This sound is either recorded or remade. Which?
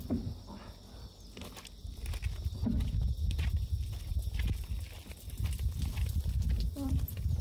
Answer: recorded